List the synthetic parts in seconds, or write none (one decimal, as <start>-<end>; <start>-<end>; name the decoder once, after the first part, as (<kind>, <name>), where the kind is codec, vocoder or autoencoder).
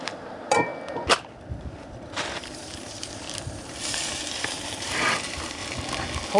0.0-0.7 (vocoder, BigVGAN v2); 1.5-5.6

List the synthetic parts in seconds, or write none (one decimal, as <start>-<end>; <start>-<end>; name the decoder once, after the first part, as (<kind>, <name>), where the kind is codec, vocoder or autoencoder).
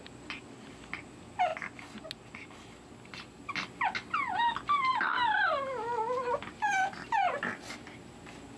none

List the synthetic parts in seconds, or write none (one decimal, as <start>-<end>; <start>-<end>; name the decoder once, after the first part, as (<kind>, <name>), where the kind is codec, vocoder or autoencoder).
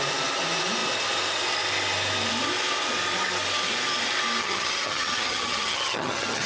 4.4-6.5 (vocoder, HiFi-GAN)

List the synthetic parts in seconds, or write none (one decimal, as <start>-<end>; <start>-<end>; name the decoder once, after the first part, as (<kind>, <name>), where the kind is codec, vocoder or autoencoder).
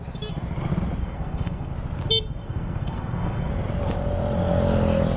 1.0-1.7 (codec, SNAC); 2.4-3.5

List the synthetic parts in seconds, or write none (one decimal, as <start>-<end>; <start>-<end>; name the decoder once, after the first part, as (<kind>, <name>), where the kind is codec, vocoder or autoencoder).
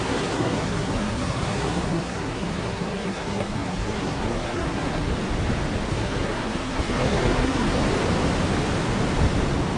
0.0-5.1 (codec, SNAC); 5.9-7.8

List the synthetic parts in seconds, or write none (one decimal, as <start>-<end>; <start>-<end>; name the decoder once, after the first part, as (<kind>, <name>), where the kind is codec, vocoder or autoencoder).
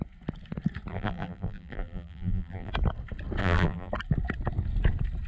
0.9-2.7 (vocoder, BigVGAN v2); 3.4-3.9